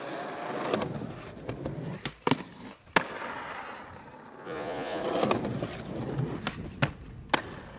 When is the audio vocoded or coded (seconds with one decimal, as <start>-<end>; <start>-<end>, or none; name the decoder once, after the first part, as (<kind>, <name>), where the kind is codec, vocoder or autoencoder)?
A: 4.4-5.0 (vocoder, Vocos)